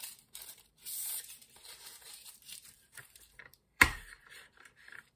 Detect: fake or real fake